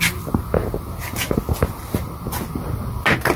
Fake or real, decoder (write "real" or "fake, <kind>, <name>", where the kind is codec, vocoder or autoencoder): real